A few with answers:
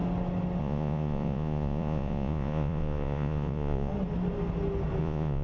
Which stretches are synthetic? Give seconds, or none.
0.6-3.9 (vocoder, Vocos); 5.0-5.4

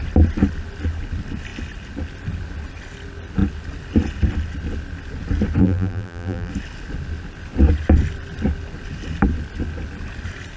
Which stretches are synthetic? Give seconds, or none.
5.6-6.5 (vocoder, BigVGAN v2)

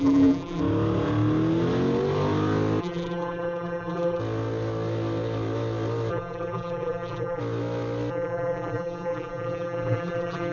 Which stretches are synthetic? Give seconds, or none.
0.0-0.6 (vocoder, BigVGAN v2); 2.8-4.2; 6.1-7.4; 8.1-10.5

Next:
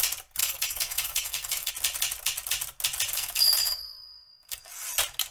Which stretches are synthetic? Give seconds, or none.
0.4-1.7 (codec, SNAC); 3.1-4.7

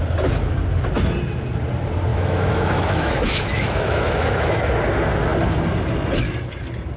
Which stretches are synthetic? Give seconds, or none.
2.1-4.6 (autoencoder, DAC-VAE)

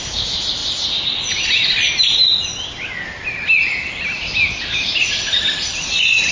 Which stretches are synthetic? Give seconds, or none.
none